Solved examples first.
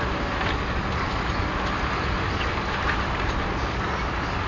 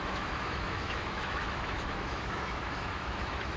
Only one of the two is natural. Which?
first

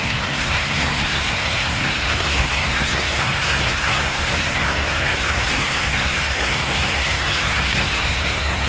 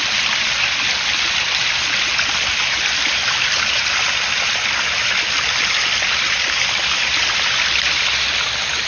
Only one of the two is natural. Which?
second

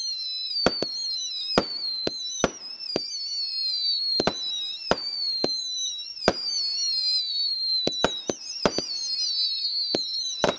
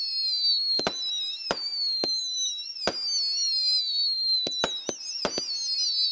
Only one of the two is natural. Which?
second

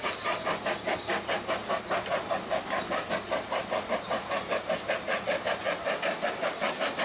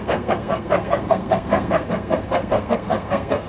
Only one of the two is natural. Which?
first